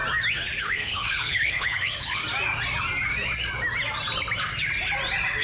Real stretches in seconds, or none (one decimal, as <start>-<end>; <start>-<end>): 0.0-0.6; 2.2-5.4